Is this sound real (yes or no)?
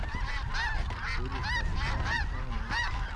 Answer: yes